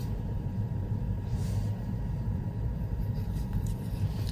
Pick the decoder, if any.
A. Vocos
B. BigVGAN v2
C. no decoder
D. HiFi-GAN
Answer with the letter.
B